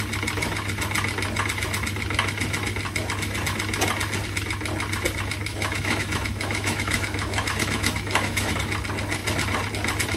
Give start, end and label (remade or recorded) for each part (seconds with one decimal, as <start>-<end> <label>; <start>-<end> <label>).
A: 0.0-5.5 recorded; 5.5-8.5 remade; 8.5-10.2 recorded